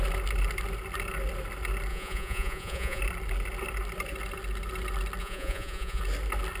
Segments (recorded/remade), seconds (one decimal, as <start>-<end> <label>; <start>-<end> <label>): 0.0-1.9 recorded; 1.9-3.0 remade; 3.0-5.2 recorded; 5.2-6.0 remade; 6.0-6.6 recorded